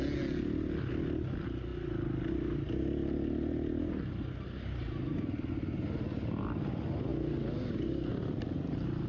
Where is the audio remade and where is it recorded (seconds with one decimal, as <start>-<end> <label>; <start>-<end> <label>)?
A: 0.0-9.1 recorded